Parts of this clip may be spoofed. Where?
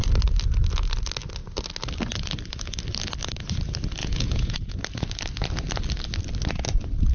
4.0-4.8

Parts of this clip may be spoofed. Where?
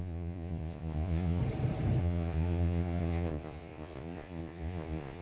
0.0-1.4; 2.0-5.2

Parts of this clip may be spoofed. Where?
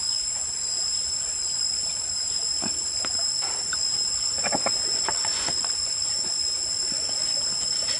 5.1-6.1